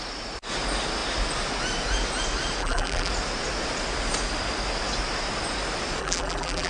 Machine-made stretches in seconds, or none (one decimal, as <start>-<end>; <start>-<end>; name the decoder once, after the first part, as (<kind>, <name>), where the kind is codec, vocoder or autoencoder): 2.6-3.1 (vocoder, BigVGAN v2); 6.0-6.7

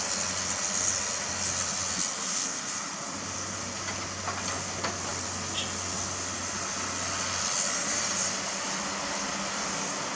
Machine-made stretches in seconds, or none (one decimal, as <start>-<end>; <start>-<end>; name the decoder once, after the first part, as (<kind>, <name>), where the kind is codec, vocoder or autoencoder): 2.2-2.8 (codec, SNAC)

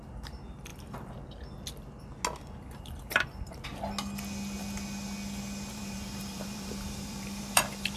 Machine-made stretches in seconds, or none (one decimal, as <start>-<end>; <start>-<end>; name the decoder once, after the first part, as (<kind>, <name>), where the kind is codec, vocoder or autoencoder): 0.0-0.7 (vocoder, BigVGAN v2); 2.8-3.7; 5.7-8.0